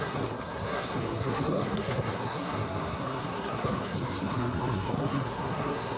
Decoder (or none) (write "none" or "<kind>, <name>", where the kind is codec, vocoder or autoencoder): codec, SNAC